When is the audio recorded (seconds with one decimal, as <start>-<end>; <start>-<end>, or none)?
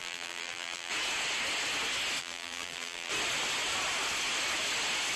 0.9-2.2; 3.1-5.2